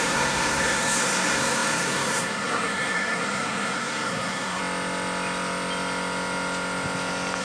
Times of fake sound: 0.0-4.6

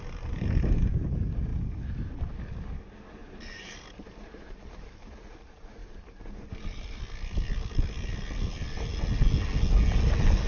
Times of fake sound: 3.2-5.1; 5.8-7.0

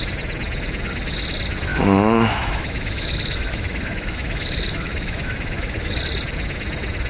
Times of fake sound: 1.7-6.0